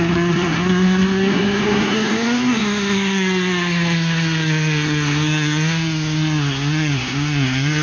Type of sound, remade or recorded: remade